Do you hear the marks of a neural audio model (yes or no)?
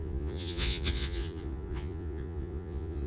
yes